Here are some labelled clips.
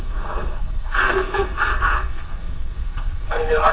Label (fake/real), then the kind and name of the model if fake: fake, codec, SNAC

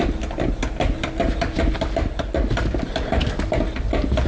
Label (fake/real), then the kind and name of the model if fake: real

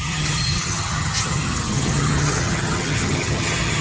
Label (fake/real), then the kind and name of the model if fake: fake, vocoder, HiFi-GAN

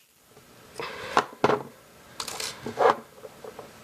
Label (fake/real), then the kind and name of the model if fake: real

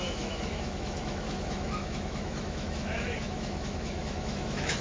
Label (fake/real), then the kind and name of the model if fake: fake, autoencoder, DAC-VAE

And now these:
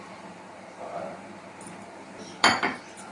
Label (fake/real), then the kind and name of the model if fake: fake, vocoder, BigVGAN v2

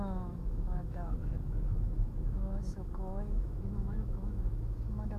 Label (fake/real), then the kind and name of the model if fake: fake, autoencoder, DAC-VAE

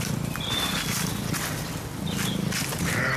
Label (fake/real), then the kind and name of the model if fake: real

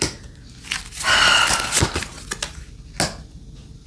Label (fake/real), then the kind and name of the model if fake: real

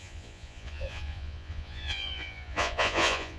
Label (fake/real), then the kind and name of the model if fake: fake, vocoder, Vocos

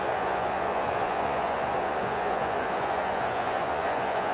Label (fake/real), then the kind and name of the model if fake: fake, vocoder, Vocos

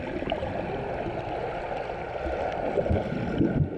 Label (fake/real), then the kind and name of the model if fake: real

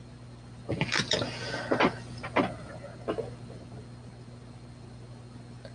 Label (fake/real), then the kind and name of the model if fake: real